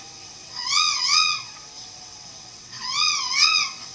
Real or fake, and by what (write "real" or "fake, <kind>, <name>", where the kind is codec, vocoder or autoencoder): fake, vocoder, WaveNeXt